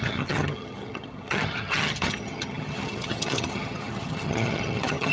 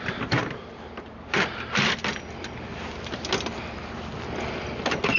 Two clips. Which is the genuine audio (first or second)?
second